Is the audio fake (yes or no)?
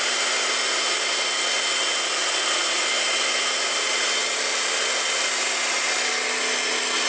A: no